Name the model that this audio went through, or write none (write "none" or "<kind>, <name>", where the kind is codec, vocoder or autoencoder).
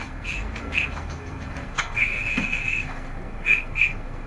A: codec, SNAC